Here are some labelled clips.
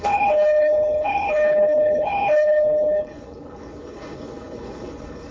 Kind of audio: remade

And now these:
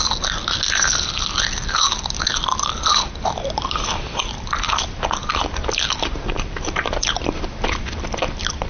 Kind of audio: recorded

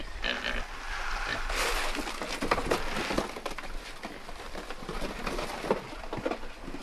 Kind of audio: recorded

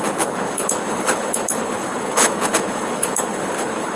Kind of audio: remade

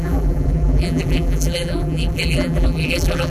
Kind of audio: remade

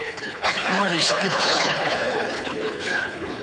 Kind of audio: remade